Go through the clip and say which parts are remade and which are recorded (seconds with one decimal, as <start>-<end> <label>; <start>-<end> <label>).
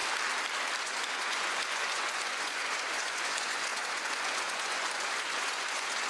0.0-0.8 recorded; 0.8-6.1 remade